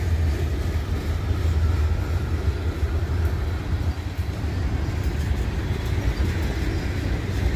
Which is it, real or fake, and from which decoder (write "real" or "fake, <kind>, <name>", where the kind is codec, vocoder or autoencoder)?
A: real